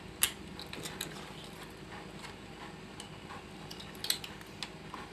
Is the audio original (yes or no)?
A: yes